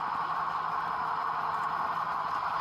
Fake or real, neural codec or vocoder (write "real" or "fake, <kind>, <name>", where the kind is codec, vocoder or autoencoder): real